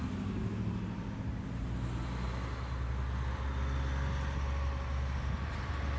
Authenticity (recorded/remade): recorded